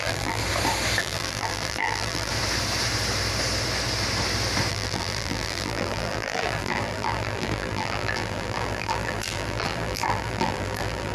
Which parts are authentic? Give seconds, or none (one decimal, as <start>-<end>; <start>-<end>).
0.4-1.0; 2.3-4.7